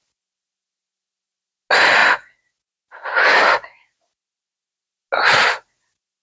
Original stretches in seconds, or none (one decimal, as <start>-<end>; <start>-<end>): 0.0-6.2